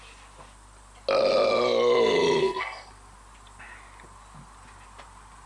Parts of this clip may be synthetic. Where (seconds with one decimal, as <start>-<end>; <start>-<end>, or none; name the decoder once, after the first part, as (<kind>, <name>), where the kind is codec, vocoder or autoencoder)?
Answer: 2.4-2.9 (codec, SNAC)